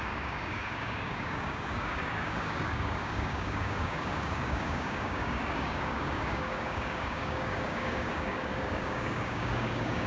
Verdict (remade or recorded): remade